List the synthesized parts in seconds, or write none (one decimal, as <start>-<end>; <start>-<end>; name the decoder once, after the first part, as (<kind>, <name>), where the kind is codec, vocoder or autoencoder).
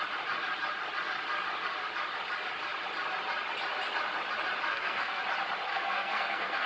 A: 4.7-5.2 (codec, SNAC); 5.7-6.7